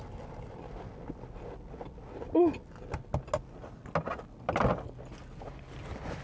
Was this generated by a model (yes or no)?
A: no